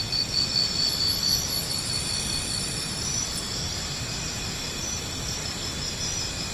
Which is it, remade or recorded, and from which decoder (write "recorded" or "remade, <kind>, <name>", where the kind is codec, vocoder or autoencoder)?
recorded